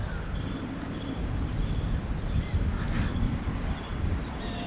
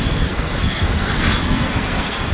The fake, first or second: second